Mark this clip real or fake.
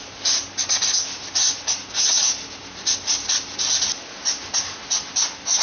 real